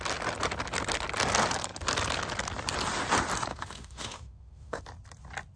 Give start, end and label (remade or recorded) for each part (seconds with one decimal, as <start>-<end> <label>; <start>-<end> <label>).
0.0-3.5 recorded; 3.5-4.8 remade; 4.8-5.6 recorded